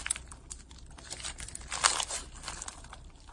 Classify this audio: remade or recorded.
recorded